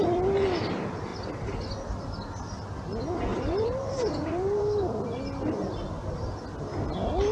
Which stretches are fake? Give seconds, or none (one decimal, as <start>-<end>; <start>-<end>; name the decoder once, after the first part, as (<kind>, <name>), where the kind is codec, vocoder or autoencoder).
3.3-5.2 (vocoder, BigVGAN v2)